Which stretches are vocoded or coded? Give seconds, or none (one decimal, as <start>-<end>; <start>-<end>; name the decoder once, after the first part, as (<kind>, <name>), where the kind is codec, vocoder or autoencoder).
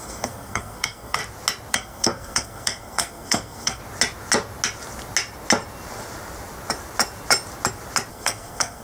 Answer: 0.0-1.2 (codec, SNAC); 1.7-3.8; 8.1-8.8